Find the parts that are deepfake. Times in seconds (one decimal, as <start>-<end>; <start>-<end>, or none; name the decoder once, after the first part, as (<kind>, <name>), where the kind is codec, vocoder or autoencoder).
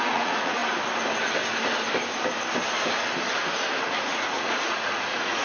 0.0-0.6 (vocoder, Vocos); 3.8-5.4